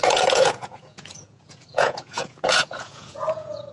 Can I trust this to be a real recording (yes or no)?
no